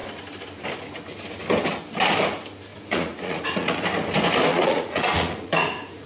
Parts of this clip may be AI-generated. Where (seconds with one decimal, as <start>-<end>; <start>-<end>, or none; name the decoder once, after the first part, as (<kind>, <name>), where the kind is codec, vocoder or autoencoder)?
2.7-3.8 (vocoder, Vocos); 4.5-6.1